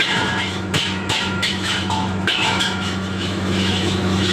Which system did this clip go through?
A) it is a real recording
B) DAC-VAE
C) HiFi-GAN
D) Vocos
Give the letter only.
B